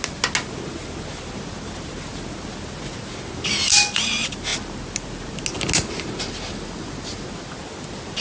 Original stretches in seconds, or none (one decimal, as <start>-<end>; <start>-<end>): 0.0-8.2